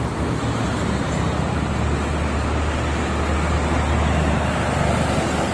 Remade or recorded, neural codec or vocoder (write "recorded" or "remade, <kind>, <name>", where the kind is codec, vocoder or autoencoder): recorded